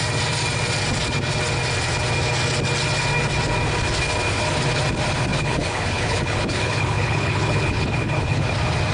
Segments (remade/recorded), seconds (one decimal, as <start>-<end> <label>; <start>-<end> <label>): 0.0-5.3 recorded; 5.3-8.5 remade; 8.5-8.9 recorded